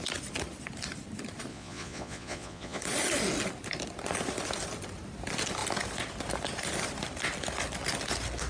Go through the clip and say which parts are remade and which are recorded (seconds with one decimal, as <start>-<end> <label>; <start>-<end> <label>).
0.0-1.5 recorded; 1.5-2.8 remade; 2.8-8.5 recorded